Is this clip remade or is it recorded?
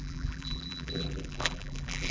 remade